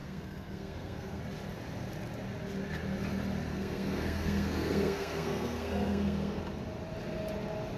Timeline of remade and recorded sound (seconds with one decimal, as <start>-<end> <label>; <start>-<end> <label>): 0.0-1.2 remade; 1.2-3.5 recorded; 3.5-6.4 remade; 6.4-7.8 recorded